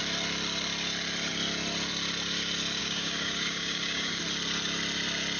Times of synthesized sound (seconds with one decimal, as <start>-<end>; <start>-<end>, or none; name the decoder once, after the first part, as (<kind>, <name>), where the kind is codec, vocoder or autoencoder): 2.8-4.2 (codec, DAC)

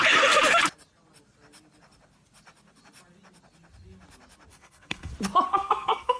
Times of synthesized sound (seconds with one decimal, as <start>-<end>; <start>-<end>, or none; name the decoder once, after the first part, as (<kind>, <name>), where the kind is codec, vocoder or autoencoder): 4.5-5.1 (codec, SNAC); 5.5-6.2

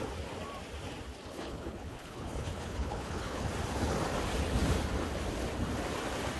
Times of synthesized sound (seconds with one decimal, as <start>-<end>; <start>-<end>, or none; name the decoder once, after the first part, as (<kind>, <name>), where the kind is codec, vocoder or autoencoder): 1.3-3.5 (codec, HILCodec)

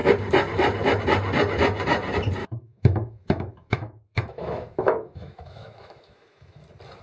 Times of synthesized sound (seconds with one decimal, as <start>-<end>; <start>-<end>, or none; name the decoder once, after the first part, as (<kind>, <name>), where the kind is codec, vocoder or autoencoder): 2.4-6.6 (autoencoder, DAC-VAE)

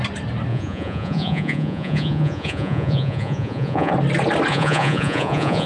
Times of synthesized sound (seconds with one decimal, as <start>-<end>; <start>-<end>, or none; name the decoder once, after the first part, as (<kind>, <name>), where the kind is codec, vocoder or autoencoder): 0.5-3.9 (vocoder, Vocos); 4.5-5.7

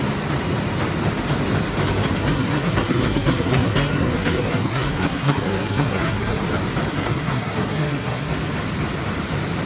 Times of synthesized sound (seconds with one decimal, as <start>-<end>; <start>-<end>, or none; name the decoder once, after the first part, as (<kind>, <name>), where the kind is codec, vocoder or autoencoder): 2.2-6.4 (codec, SNAC); 6.9-8.3

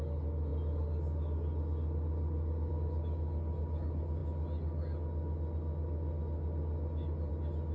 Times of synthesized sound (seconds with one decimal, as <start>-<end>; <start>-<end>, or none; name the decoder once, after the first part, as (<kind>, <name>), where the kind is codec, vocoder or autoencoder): none